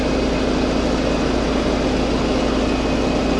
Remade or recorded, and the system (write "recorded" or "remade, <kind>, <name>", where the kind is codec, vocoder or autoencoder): recorded